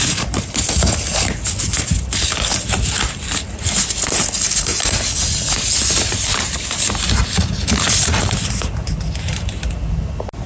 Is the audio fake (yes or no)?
no